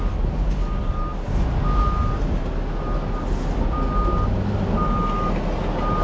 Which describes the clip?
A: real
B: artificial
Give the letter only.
A